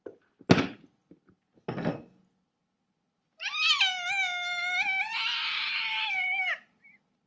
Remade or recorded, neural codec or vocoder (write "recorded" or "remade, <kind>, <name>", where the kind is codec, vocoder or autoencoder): recorded